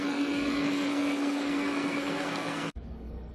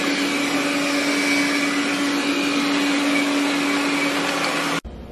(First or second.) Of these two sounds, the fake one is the first